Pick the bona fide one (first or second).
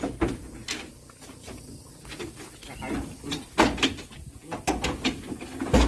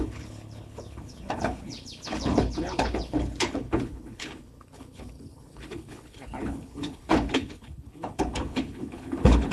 first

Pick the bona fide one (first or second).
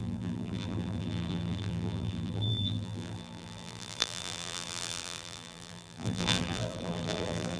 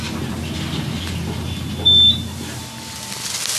second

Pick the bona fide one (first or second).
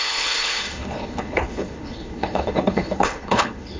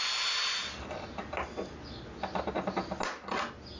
second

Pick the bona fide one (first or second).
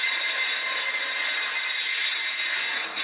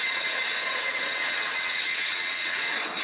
first